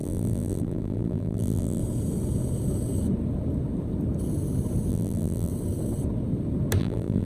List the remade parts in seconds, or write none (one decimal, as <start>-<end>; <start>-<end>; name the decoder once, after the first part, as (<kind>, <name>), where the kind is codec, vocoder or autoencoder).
0.0-1.8 (vocoder, BigVGAN v2); 4.9-5.5; 6.8-7.2